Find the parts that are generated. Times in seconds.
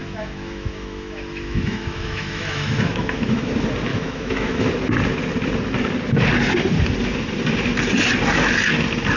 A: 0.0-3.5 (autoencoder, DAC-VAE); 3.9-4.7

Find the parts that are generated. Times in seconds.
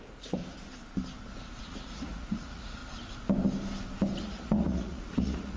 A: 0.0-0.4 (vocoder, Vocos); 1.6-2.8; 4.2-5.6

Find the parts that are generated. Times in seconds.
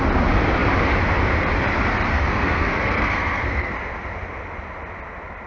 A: 2.1-3.7 (codec, SNAC)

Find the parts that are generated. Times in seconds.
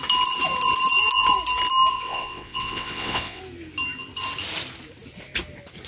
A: 1.9-3.4 (vocoder, WaveNeXt)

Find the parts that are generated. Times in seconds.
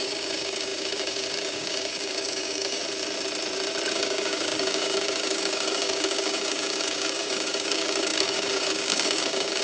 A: 0.0-2.8 (codec, DAC); 3.9-9.6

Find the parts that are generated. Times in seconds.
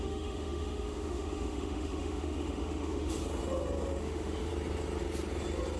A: 0.0-3.2 (autoencoder, DAC-VAE); 4.0-4.5